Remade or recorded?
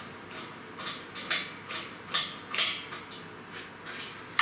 recorded